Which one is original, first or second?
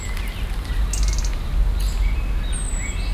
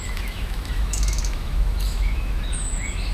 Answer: first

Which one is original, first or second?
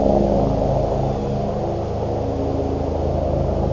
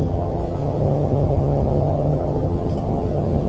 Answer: first